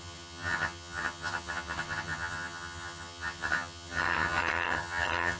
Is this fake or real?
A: fake